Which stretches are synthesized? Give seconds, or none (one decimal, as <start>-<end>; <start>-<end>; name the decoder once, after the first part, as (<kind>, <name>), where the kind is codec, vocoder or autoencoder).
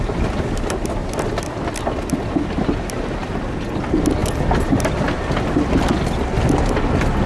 1.0-1.8 (vocoder, BigVGAN v2); 3.2-3.8